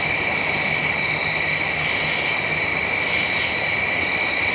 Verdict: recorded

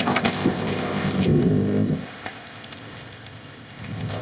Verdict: remade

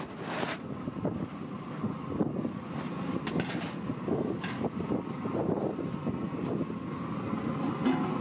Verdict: recorded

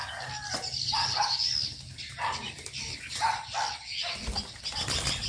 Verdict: recorded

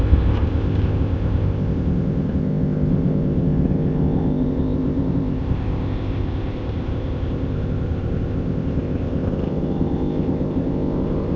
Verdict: remade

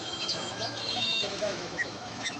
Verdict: remade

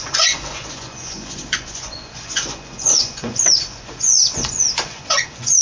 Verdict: remade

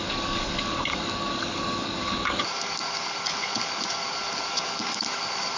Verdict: remade